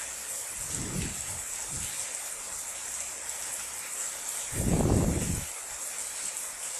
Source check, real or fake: real